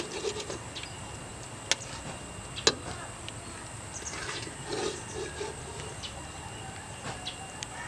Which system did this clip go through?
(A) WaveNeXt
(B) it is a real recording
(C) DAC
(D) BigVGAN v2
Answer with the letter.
B